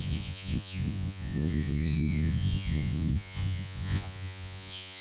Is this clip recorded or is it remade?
remade